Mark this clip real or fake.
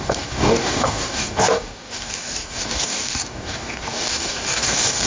fake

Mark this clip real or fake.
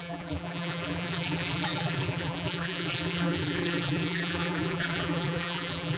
fake